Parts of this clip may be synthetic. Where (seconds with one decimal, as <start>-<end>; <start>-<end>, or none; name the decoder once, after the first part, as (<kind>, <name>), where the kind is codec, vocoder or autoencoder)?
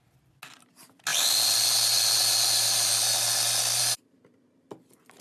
none